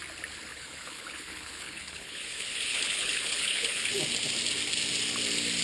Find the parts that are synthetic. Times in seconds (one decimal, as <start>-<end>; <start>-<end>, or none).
0.5-3.9